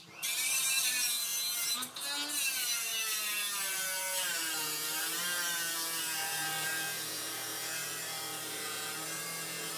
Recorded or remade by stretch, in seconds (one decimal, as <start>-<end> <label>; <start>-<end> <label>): 0.0-1.3 remade; 1.3-2.4 recorded; 2.4-9.8 remade